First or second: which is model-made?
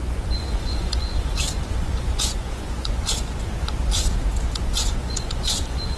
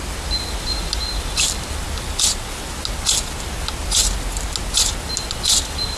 first